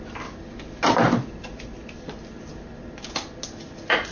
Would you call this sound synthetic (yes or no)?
no